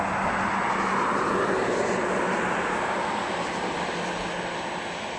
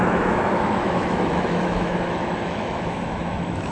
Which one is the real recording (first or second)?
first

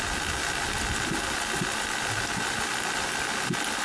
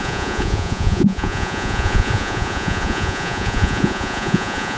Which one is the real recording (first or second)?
first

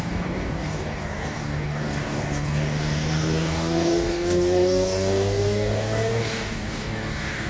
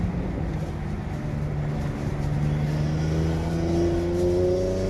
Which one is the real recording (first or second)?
second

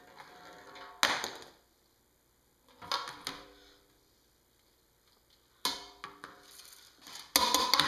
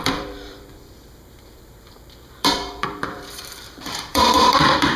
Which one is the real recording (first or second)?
first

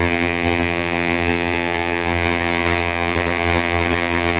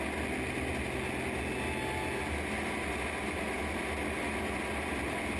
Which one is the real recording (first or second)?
second